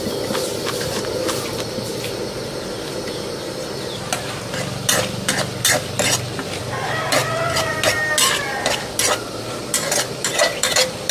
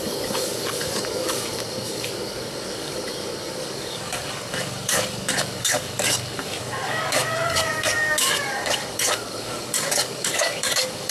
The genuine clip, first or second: first